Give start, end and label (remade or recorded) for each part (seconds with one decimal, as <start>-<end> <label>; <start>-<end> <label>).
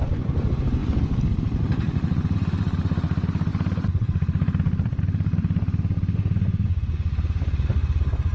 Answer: 0.0-0.8 recorded; 0.8-1.3 remade; 1.3-3.5 recorded; 3.5-5.0 remade; 5.0-8.3 recorded